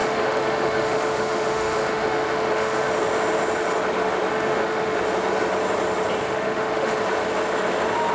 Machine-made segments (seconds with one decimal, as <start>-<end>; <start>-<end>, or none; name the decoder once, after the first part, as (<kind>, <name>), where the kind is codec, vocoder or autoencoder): 0.0-2.9 (autoencoder, DAC-VAE); 4.3-5.0; 6.2-7.0